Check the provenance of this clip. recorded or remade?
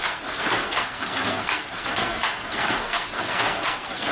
remade